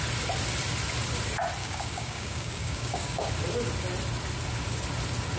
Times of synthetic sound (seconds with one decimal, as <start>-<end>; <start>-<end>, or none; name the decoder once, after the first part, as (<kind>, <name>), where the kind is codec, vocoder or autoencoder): 1.6-3.3 (codec, DAC)